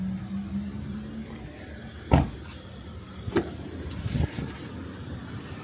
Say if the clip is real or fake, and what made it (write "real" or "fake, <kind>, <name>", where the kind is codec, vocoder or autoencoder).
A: real